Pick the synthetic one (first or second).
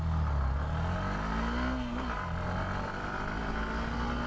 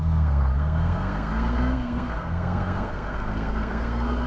second